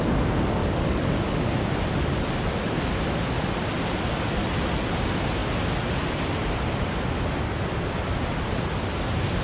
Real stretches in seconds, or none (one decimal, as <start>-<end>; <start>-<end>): 0.0-0.6; 1.5-9.4